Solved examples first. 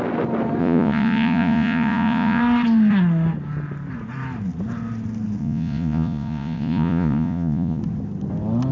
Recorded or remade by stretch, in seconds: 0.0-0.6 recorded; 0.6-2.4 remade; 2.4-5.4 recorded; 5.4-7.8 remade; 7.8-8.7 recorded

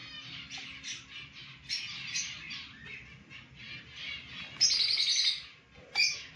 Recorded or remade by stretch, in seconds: 0.0-6.4 recorded

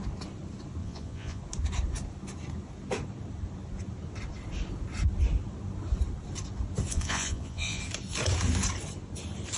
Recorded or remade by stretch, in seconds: 0.0-0.8 recorded; 0.8-1.4 remade; 1.4-6.9 recorded; 6.9-7.8 remade; 7.8-9.6 recorded

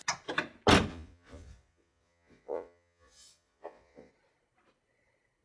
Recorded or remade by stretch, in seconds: 0.0-0.9 recorded; 0.9-4.1 remade; 4.1-5.4 recorded